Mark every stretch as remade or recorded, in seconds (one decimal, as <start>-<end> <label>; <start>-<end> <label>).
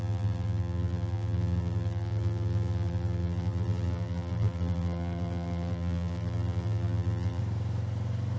0.0-7.4 remade; 7.4-8.4 recorded